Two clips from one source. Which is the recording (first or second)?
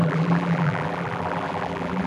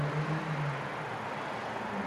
second